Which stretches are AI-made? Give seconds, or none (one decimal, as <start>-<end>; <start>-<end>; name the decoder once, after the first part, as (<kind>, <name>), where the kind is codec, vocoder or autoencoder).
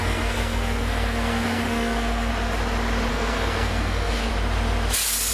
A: 0.0-2.3 (codec, SNAC); 3.1-4.3